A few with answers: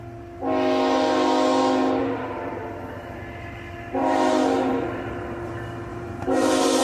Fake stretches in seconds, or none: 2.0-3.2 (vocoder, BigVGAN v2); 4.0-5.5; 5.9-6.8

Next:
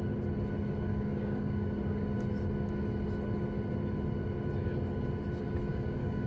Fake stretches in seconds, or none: 0.9-1.8 (codec, DAC); 5.7-6.3

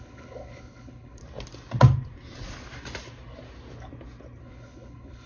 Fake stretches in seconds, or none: 0.0-1.2 (codec, HILCodec); 4.4-5.3

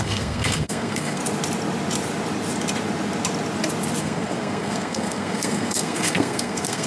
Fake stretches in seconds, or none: 0.0-1.2 (codec, SNAC); 4.0-6.9

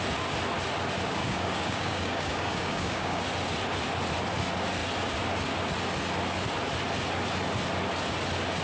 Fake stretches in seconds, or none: 1.2-3.2 (codec, DAC)

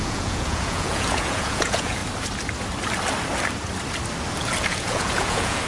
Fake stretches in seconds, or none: 0.0-2.0 (vocoder, Vocos); 4.4-5.7